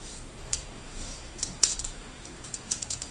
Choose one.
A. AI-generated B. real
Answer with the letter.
A